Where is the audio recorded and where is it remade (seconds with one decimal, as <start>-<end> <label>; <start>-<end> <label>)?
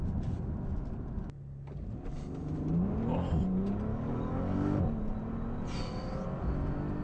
0.0-3.9 recorded; 3.9-4.8 remade; 4.8-7.0 recorded